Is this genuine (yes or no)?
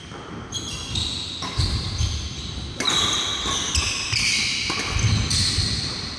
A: yes